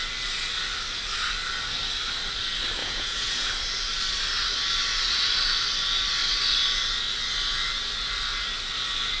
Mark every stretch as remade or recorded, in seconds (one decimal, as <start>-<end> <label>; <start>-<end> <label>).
0.0-2.8 recorded; 2.8-3.5 remade; 3.5-9.2 recorded